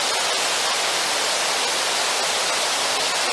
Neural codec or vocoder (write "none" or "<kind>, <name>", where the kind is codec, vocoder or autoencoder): none